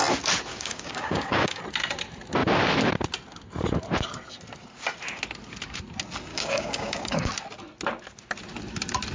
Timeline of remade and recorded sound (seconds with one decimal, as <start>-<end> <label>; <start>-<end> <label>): 0.0-0.5 recorded; 0.5-1.6 remade; 1.6-6.3 recorded; 6.3-7.3 remade; 7.3-9.1 recorded